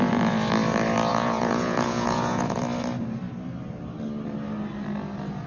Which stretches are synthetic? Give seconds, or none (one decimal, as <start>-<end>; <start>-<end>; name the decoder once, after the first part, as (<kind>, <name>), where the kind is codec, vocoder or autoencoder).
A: 1.1-2.6 (vocoder, Vocos)